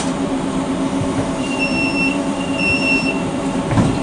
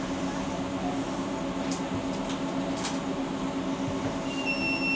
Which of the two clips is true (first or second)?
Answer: second